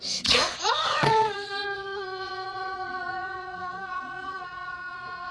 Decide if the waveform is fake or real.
fake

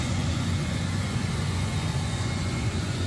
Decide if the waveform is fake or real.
fake